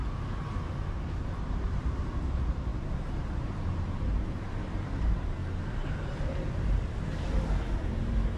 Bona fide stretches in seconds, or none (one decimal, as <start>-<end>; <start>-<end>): 0.0-1.4